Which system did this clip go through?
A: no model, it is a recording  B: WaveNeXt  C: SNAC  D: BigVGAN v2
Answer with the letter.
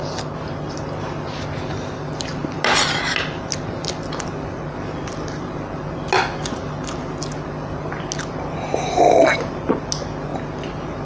A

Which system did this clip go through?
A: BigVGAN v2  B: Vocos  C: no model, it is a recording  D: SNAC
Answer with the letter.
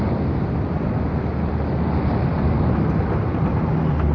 C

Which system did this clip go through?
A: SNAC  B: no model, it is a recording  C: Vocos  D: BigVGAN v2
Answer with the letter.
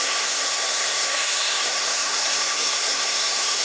A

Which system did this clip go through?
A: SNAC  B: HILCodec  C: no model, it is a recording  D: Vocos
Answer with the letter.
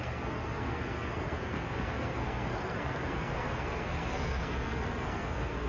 A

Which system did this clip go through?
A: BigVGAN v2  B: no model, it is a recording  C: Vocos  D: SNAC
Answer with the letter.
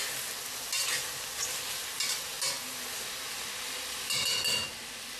B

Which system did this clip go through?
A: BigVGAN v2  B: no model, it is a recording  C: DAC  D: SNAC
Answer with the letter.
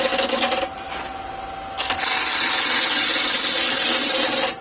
B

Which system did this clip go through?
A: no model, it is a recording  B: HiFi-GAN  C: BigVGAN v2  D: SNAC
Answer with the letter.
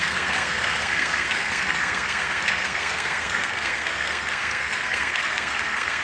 D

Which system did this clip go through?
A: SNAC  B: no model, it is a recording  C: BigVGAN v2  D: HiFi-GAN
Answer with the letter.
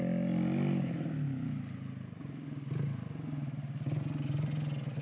B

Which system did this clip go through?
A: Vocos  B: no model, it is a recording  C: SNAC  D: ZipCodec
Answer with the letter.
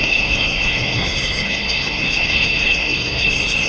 C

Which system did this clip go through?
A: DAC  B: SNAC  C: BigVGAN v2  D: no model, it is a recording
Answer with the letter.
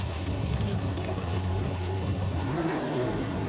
B